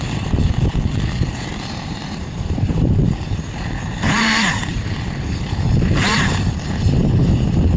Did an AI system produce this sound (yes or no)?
yes